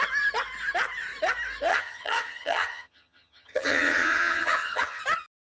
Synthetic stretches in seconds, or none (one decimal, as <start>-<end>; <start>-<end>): 1.7-5.0